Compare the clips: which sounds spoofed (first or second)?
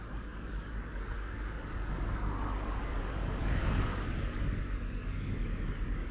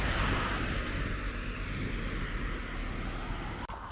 first